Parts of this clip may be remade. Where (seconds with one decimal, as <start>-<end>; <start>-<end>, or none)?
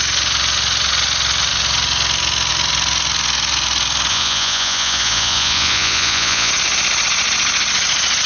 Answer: 4.1-6.5